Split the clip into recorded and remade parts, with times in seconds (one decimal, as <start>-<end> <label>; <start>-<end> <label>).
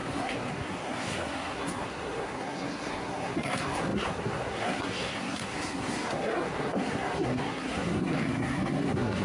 0.0-9.2 remade